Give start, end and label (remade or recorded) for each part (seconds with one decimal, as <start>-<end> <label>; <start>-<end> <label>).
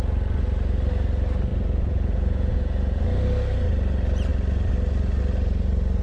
0.0-1.5 recorded; 1.5-3.0 remade; 3.0-6.0 recorded